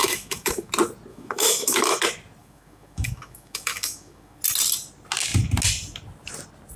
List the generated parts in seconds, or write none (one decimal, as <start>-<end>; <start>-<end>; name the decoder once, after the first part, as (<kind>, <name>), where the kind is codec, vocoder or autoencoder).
0.0-0.7 (autoencoder, DAC-VAE); 1.1-2.0; 2.4-4.4